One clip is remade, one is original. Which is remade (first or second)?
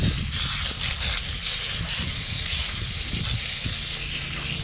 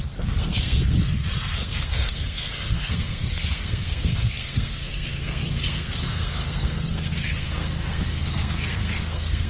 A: second